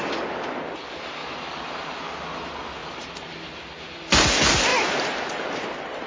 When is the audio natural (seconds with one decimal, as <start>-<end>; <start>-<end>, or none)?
0.0-1.2; 2.0-2.8; 4.0-6.1